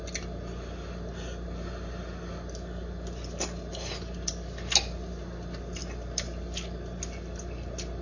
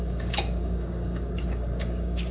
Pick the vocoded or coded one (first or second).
second